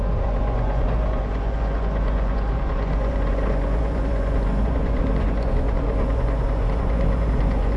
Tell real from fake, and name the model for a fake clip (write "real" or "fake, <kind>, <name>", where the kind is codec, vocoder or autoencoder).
fake, vocoder, Vocos